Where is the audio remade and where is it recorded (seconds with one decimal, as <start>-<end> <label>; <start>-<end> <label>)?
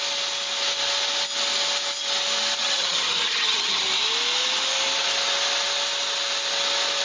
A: 0.0-2.6 recorded; 2.6-3.8 remade; 3.8-7.0 recorded